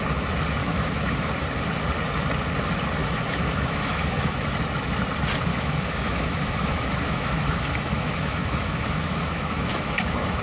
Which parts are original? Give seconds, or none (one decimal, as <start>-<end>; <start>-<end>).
0.0-0.6; 1.3-3.0; 4.5-5.5